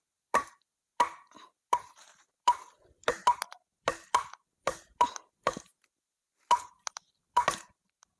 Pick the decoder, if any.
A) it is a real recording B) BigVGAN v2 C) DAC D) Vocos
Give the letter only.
A